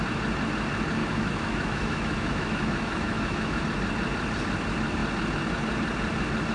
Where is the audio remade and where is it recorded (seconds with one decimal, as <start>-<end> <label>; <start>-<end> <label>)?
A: 0.0-1.0 recorded; 1.0-3.6 remade; 3.6-6.5 recorded

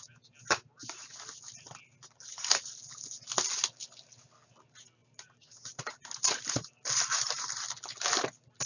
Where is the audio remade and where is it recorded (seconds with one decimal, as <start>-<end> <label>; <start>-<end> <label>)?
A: 0.0-5.0 recorded; 5.0-7.6 remade; 7.6-8.7 recorded